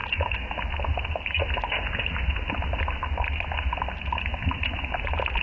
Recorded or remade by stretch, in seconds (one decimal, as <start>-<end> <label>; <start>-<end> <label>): 0.0-0.6 remade; 0.6-5.4 recorded